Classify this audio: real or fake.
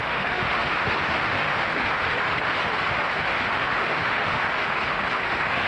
fake